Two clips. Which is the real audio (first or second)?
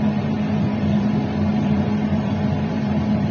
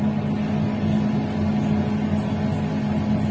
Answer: second